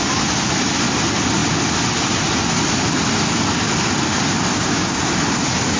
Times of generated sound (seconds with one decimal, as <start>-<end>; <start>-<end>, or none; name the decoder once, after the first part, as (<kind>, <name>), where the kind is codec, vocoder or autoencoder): 4.5-5.0 (codec, DAC)